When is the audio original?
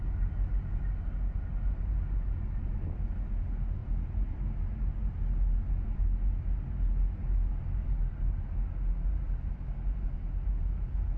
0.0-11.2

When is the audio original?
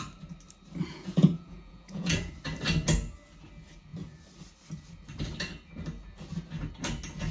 0.0-0.9; 2.3-7.3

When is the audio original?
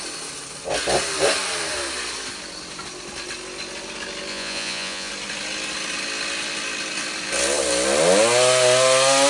0.0-4.3; 5.1-9.3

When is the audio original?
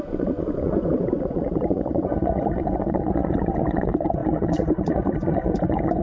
none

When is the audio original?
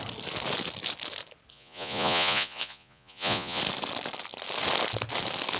0.0-1.5; 3.6-5.6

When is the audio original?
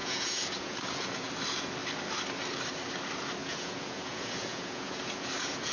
1.3-3.4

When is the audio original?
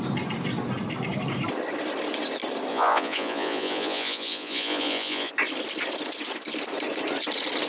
0.0-2.7; 5.3-7.7